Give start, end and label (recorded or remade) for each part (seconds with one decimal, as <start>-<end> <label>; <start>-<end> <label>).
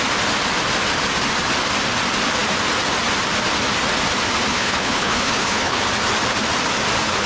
0.0-4.5 recorded; 4.5-5.8 remade; 5.8-7.3 recorded